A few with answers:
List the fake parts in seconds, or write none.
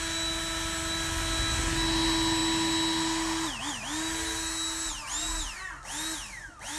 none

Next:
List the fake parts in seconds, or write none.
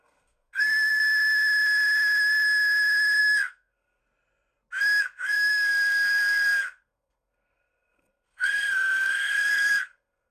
0.0-1.0 (codec, SNAC); 3.2-4.0; 5.0-10.3